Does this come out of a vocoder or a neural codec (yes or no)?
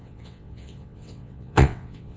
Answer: yes